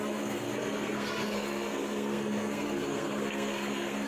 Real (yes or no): no